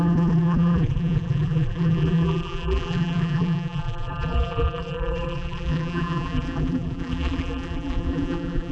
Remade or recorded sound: remade